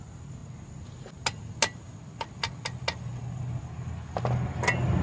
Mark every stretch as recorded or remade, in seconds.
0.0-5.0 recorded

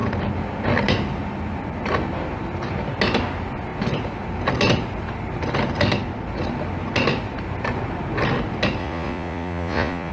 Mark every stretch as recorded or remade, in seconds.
0.0-8.8 recorded; 8.8-10.1 remade

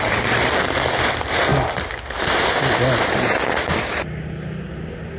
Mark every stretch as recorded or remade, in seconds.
0.0-5.2 recorded